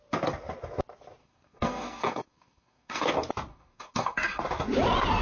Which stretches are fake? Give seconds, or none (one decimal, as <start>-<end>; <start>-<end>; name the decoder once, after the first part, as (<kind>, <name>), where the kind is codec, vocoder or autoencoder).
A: 1.2-3.1 (codec, SNAC); 3.5-4.4